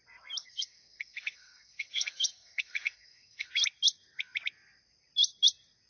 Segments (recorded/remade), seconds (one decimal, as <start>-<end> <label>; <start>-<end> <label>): 0.0-0.4 recorded; 0.4-3.5 remade; 3.5-5.9 recorded